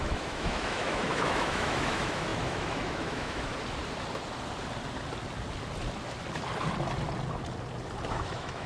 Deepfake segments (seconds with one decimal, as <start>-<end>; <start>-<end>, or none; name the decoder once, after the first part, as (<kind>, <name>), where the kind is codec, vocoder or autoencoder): 0.0-3.5 (autoencoder, DAC-VAE); 8.1-8.7